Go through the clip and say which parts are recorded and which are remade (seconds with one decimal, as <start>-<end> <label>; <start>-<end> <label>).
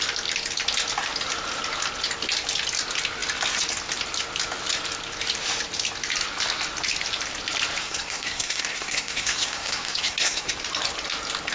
0.0-7.8 recorded; 7.8-10.5 remade; 10.5-11.5 recorded